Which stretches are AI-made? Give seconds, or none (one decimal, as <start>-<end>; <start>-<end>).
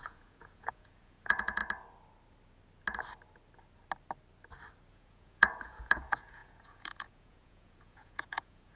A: 0.0-1.6; 4.9-8.8